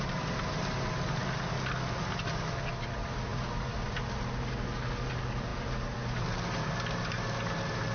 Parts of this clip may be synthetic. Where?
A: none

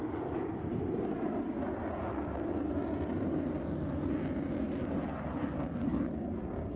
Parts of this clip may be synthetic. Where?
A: 2.1-2.7 (codec, SNAC)

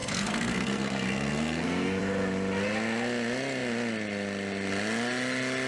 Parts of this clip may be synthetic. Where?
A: 0.0-2.0 (codec, SNAC)

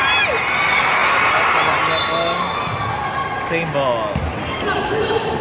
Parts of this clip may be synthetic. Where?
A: none

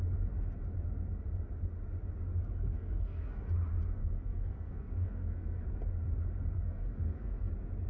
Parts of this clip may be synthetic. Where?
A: 2.7-3.4 (codec, SNAC); 4.0-5.6; 6.5-7.5

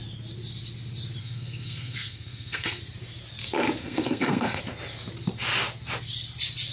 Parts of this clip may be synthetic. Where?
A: 1.2-2.8 (codec, SNAC); 3.8-4.6

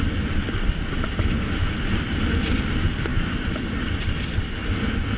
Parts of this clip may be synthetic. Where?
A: none